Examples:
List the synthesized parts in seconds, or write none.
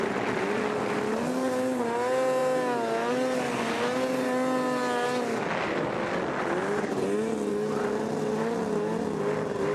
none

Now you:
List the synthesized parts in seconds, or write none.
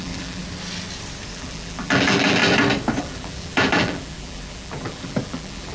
0.0-0.4 (vocoder, BigVGAN v2); 1.3-2.4; 3.0-5.7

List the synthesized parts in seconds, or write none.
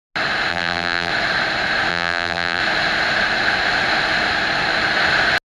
0.5-1.1 (vocoder, BigVGAN v2); 1.9-2.6